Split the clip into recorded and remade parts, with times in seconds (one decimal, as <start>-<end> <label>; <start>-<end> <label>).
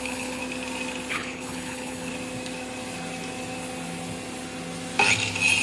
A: 0.0-0.4 remade; 0.4-1.1 recorded; 1.1-2.1 remade; 2.1-5.6 recorded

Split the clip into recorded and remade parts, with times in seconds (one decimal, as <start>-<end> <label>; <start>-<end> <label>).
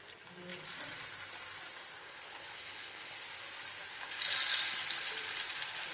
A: 0.0-2.0 recorded; 2.0-3.1 remade; 3.1-5.9 recorded